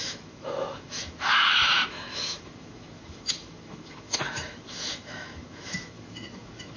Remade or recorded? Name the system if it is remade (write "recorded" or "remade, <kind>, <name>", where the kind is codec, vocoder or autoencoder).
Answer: remade, autoencoder, DAC-VAE